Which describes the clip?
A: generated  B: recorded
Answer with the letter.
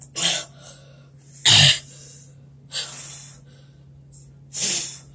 B